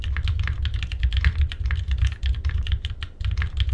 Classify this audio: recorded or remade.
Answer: recorded